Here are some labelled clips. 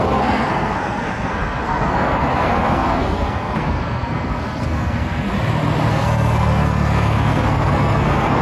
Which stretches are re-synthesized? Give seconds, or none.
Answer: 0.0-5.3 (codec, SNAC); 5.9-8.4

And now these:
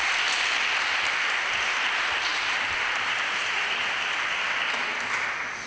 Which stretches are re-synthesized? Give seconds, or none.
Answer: none

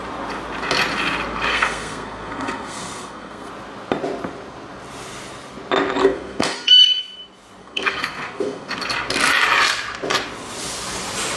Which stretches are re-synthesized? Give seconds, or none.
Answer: 1.5-3.5 (codec, SNAC); 6.0-7.0; 7.6-8.7

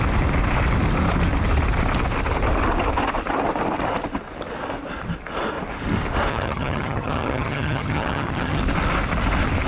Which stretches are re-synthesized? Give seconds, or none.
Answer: 6.3-8.6 (vocoder, HiFi-GAN)

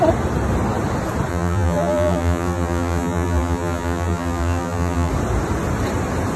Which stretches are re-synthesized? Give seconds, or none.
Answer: 1.3-5.1 (vocoder, BigVGAN v2)

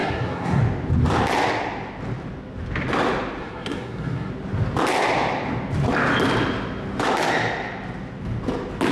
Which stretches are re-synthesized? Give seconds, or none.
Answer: 0.0-0.6 (codec, SNAC); 3.4-4.3